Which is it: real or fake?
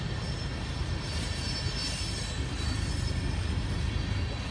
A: real